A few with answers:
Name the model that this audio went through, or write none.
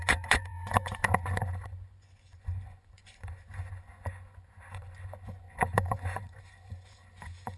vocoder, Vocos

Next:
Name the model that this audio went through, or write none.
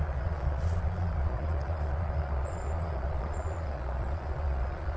vocoder, Vocos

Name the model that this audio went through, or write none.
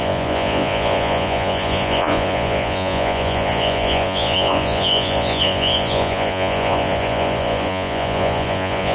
vocoder, Vocos